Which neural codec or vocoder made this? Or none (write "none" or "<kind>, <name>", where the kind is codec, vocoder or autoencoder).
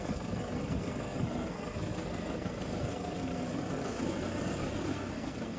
codec, SNAC